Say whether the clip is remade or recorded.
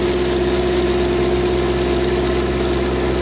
recorded